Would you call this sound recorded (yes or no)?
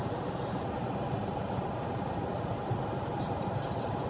yes